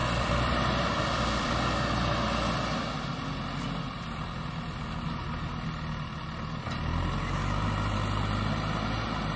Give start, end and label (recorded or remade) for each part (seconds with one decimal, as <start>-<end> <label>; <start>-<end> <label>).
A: 0.0-1.5 remade; 1.5-9.4 recorded